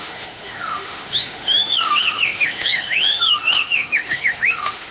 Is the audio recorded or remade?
remade